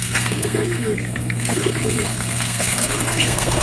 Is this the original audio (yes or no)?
no